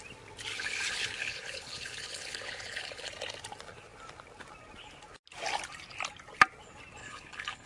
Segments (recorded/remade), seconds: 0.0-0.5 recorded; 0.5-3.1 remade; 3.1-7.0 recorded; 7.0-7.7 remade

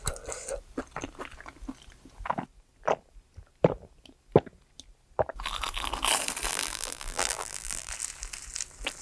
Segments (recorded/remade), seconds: 0.0-6.5 recorded; 6.5-7.9 remade; 7.9-9.0 recorded